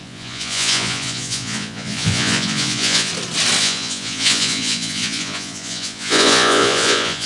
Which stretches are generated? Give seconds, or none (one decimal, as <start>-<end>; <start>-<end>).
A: 0.0-3.1; 3.6-7.3